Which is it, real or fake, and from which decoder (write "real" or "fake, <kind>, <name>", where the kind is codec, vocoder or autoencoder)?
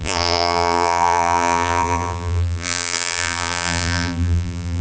fake, vocoder, BigVGAN v2